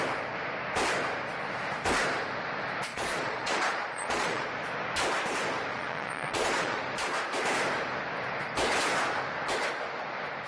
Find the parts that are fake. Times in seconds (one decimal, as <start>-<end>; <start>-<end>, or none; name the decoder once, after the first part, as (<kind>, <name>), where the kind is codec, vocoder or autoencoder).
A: 2.9-4.5 (vocoder, Vocos); 5.7-6.8